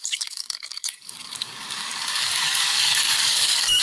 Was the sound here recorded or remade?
remade